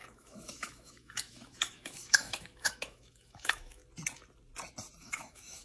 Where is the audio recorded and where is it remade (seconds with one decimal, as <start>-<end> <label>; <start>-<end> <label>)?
0.0-3.8 remade; 3.8-5.0 recorded; 5.0-5.6 remade